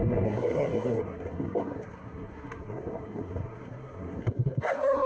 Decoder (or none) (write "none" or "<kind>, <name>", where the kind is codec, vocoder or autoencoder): codec, SNAC